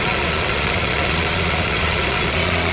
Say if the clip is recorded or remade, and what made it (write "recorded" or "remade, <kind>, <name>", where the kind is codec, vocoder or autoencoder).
remade, vocoder, Vocos